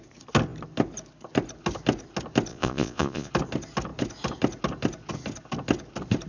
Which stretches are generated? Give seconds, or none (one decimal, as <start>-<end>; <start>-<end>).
2.5-3.3